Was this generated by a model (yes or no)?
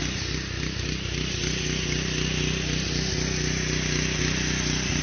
no